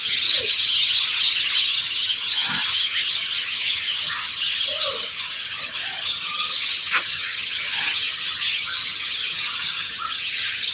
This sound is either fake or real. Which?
fake